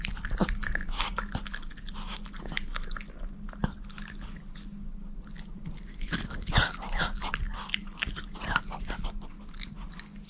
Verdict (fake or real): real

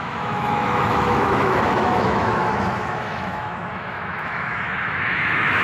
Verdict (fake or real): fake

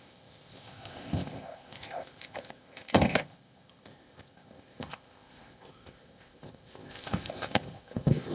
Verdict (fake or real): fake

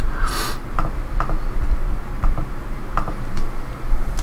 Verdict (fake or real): real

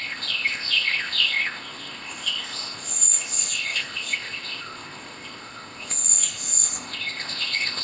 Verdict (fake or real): fake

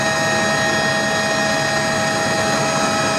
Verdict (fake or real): real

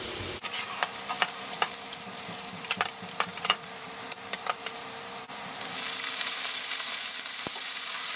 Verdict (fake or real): fake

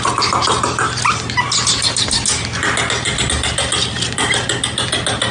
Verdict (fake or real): real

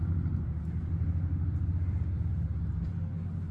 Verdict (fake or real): real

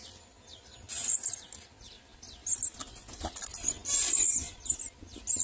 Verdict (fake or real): real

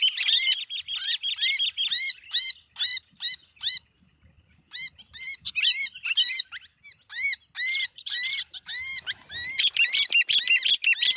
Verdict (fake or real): real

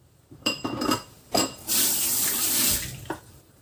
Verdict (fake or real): fake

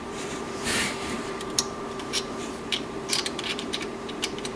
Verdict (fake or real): fake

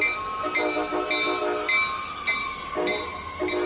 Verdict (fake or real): real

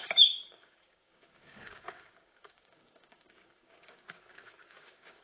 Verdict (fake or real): fake